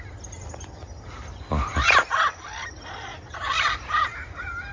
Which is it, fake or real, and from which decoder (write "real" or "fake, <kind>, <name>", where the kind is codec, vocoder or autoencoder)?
real